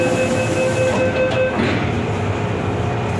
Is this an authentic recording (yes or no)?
yes